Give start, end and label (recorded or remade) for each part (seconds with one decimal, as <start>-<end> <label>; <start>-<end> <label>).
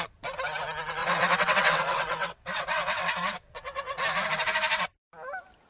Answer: 0.0-1.0 recorded; 1.0-4.0 remade; 4.0-5.7 recorded